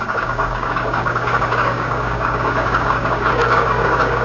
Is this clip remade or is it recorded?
remade